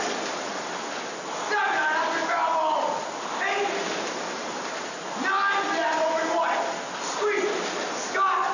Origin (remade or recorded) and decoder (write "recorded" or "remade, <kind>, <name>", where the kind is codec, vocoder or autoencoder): recorded